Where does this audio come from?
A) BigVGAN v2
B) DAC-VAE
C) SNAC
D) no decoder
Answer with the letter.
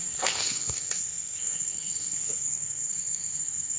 C